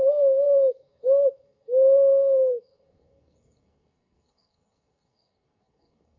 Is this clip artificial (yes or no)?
yes